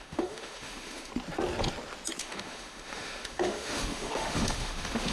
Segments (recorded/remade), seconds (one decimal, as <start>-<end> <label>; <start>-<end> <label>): 0.0-1.1 remade; 1.1-2.2 recorded; 2.2-5.1 remade